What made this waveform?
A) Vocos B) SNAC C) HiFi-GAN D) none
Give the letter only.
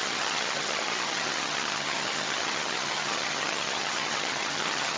C